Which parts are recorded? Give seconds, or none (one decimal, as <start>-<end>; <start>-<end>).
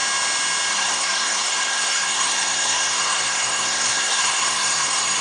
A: 0.0-0.7